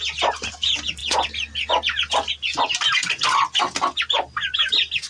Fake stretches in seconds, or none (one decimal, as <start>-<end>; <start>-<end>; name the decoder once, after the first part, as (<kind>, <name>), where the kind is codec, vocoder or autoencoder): none